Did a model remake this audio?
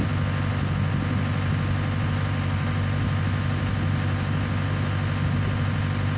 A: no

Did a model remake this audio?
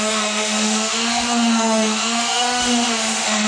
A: yes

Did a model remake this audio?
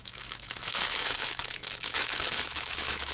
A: yes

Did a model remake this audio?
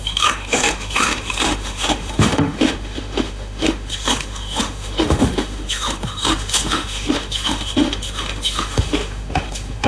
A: yes